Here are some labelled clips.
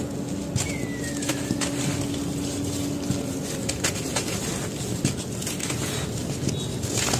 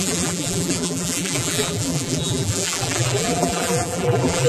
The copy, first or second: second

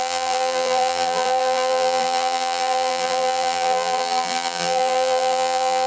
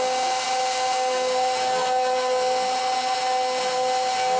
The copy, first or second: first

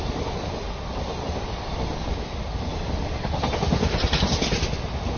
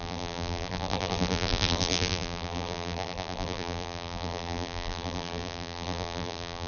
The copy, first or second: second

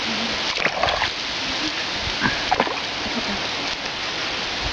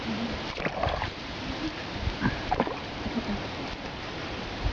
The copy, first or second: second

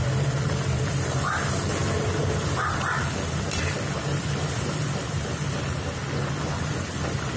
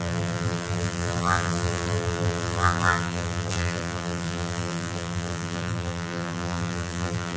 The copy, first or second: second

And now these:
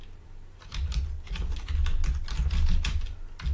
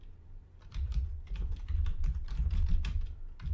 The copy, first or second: second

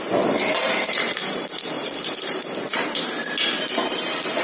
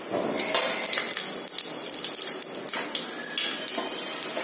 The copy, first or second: first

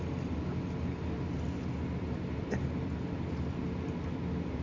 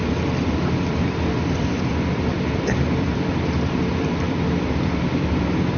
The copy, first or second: second